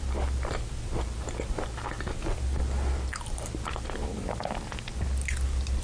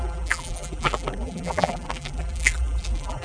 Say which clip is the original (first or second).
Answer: first